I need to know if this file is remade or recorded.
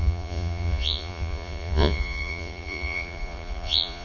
remade